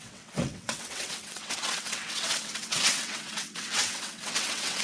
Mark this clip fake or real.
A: fake